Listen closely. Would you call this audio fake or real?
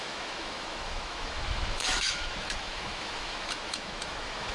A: fake